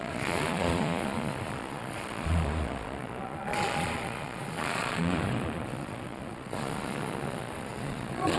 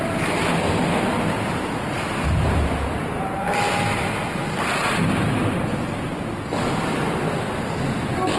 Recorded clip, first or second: second